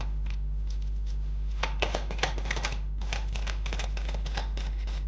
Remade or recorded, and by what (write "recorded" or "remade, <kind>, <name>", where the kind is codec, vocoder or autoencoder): remade, autoencoder, DAC-VAE